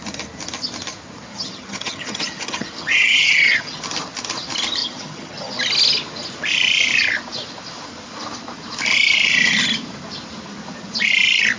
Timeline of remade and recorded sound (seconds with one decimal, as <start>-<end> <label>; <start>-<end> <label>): 0.0-1.3 recorded; 1.3-3.8 remade; 3.8-4.8 recorded; 4.8-5.5 remade; 5.5-11.6 recorded